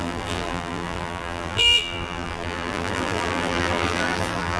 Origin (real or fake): fake